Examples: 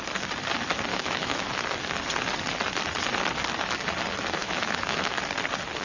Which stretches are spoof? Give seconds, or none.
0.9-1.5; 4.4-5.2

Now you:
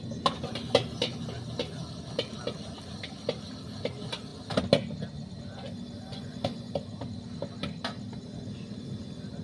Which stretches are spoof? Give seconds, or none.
6.1-6.7